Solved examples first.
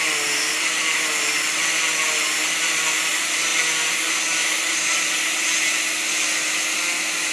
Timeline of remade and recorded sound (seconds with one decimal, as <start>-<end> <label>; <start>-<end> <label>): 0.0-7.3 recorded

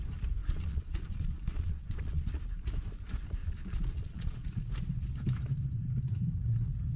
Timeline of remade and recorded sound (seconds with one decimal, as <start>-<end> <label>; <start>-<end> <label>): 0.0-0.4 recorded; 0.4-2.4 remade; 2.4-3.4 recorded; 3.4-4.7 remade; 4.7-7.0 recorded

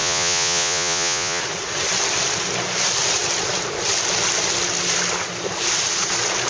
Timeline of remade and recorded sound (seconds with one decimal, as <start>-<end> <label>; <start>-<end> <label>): 0.0-1.4 remade; 1.4-6.5 recorded

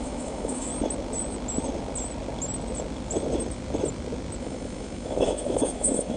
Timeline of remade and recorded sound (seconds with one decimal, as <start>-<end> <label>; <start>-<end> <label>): 0.0-0.7 remade; 0.7-4.4 recorded; 4.4-6.2 remade